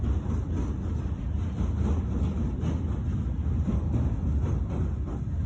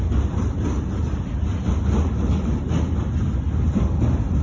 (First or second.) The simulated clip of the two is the second